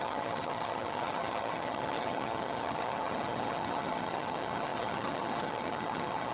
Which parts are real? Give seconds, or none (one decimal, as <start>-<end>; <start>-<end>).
none